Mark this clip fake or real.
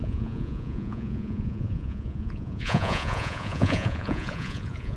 fake